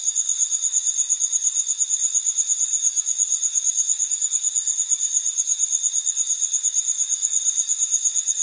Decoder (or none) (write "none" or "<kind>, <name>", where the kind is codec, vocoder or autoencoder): vocoder, Vocos